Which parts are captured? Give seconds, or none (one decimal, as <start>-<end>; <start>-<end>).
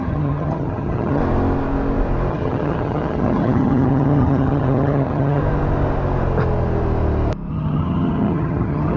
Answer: 1.2-2.3; 5.4-7.5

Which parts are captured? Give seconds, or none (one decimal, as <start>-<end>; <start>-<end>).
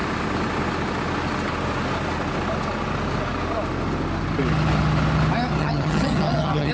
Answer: 0.0-5.6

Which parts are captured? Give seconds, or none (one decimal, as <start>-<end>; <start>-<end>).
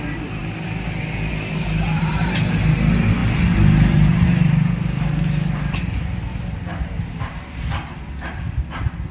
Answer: 0.0-9.1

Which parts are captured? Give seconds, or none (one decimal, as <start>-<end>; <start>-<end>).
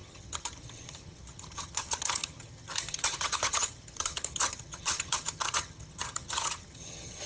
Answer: none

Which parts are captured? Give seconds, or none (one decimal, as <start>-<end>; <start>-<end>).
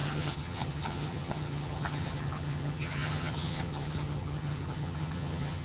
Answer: none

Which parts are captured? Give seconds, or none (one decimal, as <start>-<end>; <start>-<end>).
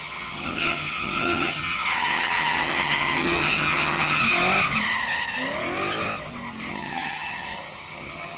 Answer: 4.2-6.7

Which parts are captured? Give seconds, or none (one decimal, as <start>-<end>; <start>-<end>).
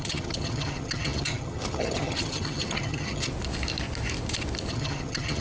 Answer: 3.3-4.7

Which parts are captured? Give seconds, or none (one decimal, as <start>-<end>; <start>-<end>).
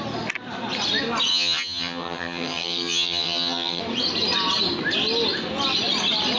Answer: 0.0-1.3; 3.8-6.4